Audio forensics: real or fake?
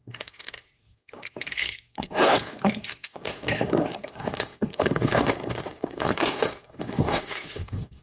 fake